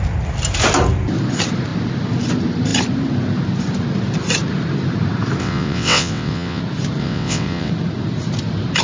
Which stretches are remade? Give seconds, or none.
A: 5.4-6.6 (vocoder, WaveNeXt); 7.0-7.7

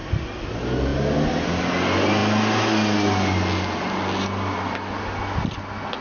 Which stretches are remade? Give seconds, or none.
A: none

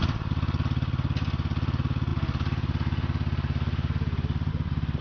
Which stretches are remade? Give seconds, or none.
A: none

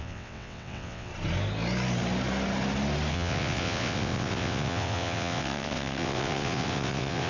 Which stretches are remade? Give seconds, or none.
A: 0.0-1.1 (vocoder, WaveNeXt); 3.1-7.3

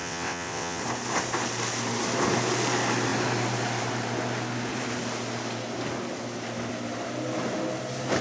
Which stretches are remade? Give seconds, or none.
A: 0.0-0.8 (vocoder, WaveNeXt)

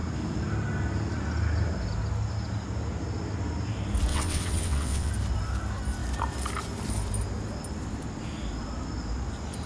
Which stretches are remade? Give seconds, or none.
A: 4.1-5.1 (vocoder, WaveNeXt)

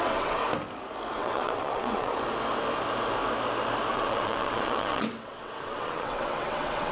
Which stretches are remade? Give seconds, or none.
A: 0.0-0.4 (vocoder, WaveNeXt); 1.1-2.1; 3.9-6.9

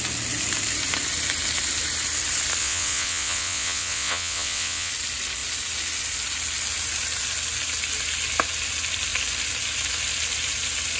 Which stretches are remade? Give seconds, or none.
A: 2.6-4.9 (vocoder, WaveNeXt)